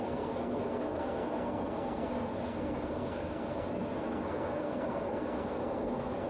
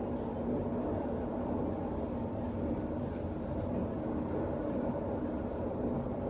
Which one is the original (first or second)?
second